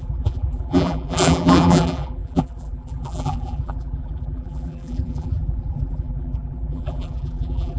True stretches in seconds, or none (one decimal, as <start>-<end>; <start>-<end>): none

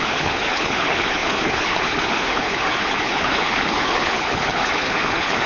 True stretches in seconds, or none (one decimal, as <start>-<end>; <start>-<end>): none

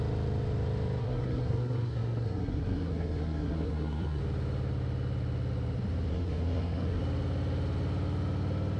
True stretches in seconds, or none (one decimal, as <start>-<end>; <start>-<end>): 0.0-1.0; 4.2-6.1; 7.0-8.8

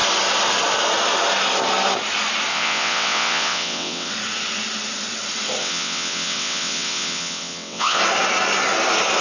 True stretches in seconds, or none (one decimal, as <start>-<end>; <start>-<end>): 0.0-2.5; 4.1-5.6; 8.0-9.2

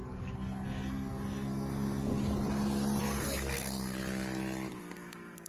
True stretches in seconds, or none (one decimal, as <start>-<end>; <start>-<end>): 2.1-3.0; 4.0-4.8